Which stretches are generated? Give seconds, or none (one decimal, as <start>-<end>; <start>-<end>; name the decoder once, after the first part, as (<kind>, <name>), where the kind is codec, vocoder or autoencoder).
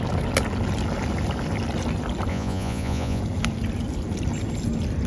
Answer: 2.3-3.2 (vocoder, Vocos)